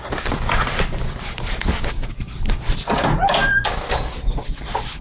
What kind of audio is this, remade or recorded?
recorded